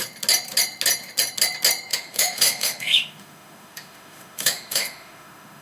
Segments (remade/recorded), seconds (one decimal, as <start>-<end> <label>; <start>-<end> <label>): 0.0-1.9 recorded; 1.9-5.6 remade